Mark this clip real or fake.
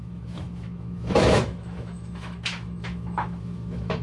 fake